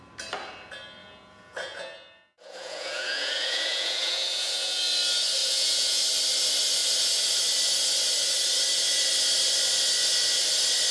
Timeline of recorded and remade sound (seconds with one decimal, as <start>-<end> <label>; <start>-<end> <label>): 0.0-1.0 recorded; 1.0-4.8 remade; 4.8-5.4 recorded; 5.4-6.0 remade; 6.0-10.9 recorded